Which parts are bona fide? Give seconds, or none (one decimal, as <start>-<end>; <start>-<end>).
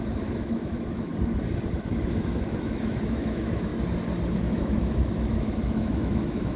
1.1-1.8; 3.7-4.3